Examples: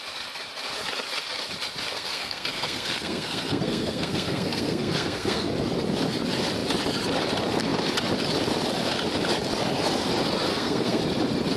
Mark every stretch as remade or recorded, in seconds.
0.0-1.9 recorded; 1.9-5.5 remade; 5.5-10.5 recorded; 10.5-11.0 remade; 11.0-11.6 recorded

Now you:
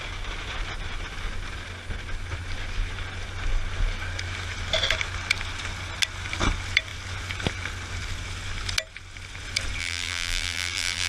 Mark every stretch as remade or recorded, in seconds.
0.0-9.8 recorded; 9.8-11.1 remade

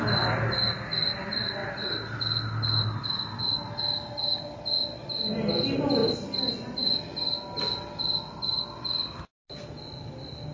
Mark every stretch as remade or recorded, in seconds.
0.0-10.5 recorded